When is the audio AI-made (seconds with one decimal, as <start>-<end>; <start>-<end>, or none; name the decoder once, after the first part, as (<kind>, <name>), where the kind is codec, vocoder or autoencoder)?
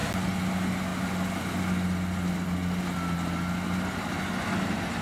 none